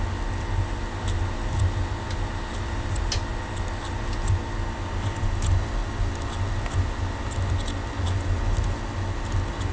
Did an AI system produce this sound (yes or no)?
no